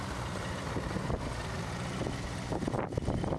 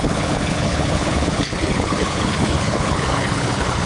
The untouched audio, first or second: first